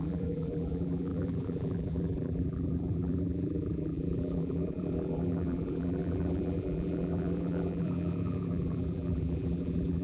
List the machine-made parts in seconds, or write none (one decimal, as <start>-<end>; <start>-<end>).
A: 0.0-10.0